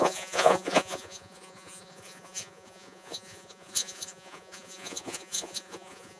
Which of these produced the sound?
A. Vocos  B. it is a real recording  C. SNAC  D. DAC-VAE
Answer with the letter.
A